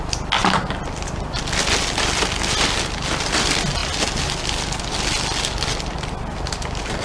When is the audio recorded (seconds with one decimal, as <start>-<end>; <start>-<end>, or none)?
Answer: 0.0-7.0